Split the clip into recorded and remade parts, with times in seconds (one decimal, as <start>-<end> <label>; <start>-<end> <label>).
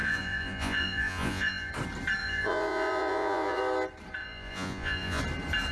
0.0-1.7 remade; 1.7-2.2 recorded; 2.2-3.6 remade; 3.6-4.2 recorded; 4.2-5.2 remade; 5.2-5.7 recorded